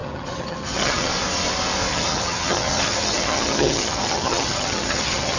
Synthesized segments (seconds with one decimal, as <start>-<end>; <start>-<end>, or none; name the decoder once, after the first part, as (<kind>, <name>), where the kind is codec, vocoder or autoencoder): 0.0-1.1 (vocoder, HiFi-GAN); 1.9-5.4